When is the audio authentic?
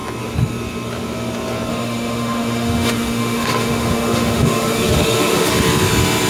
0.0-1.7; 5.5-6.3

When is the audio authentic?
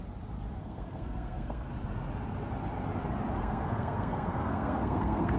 0.0-0.6; 1.7-3.4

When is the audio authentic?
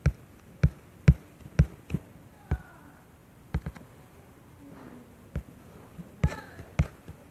0.0-1.8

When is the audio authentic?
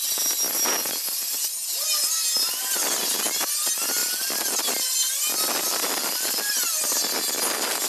0.0-4.0; 6.5-7.9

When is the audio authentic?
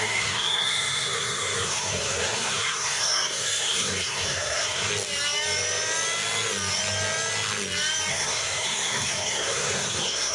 4.9-8.1